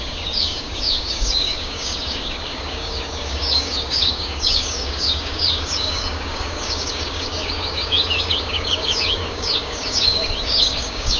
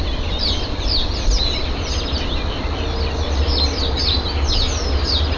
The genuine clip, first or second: second